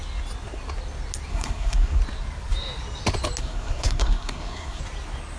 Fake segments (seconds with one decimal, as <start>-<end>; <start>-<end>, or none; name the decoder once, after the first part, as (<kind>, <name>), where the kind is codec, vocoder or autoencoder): 1.3-2.0 (codec, SNAC); 3.4-4.8